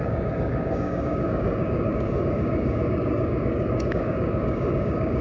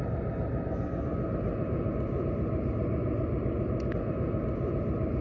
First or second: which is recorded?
second